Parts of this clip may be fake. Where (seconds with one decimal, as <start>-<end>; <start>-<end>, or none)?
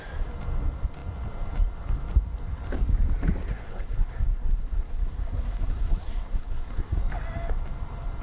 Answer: 3.5-7.0